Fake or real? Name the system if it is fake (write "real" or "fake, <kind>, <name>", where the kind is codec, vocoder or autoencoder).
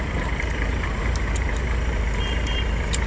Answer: fake, vocoder, BigVGAN v2